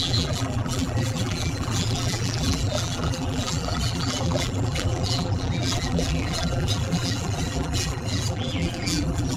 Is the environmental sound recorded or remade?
remade